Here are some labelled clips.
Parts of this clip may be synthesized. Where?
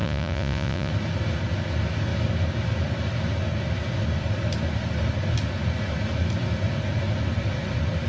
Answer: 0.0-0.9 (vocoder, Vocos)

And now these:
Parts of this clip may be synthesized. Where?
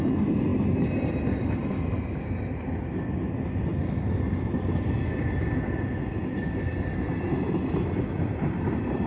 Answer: none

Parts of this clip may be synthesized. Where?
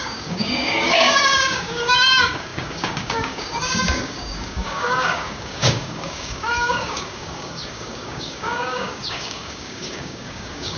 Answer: 0.0-10.8 (codec, DAC)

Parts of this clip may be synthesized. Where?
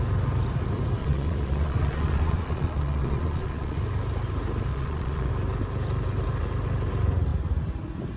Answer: 1.0-3.8 (vocoder, Vocos); 4.7-5.3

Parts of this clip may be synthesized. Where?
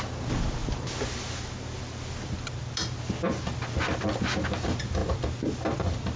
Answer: none